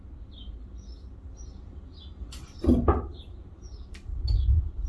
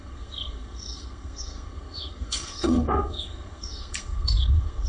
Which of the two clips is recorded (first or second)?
first